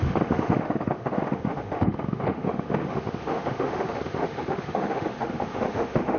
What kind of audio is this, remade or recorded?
remade